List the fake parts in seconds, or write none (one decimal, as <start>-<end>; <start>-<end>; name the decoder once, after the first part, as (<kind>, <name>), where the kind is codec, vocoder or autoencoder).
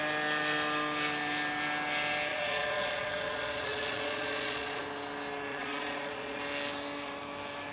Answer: 2.3-4.8 (vocoder, Vocos); 5.5-6.4